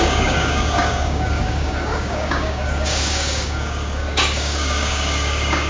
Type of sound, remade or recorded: remade